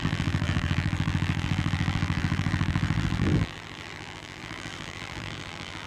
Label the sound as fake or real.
fake